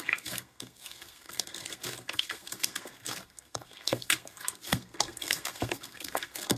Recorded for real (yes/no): no